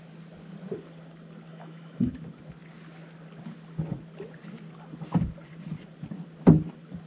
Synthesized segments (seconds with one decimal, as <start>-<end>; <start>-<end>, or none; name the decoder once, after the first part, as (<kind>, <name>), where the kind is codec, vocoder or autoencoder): 1.5-2.1 (autoencoder, DAC-VAE)